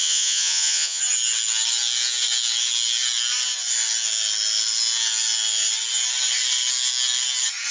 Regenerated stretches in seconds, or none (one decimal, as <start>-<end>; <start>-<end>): 0.0-1.0